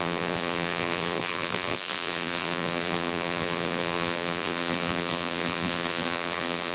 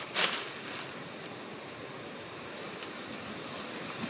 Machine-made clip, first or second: first